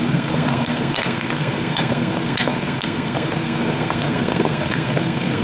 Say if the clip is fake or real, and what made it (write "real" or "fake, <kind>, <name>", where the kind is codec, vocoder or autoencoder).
fake, codec, SNAC